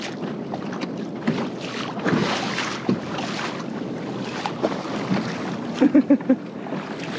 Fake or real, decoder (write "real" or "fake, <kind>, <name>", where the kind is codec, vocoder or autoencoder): real